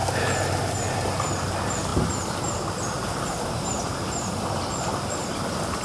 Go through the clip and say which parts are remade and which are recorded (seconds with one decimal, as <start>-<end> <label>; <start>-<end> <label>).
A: 0.0-5.8 recorded